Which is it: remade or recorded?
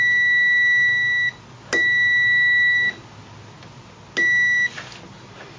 recorded